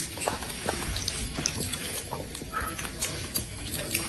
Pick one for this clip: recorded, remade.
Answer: remade